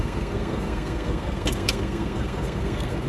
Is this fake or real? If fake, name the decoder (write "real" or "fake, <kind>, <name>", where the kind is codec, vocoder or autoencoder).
fake, codec, SNAC